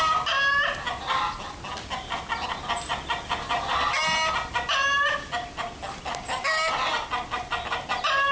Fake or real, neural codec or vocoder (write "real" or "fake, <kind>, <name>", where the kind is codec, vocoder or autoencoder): real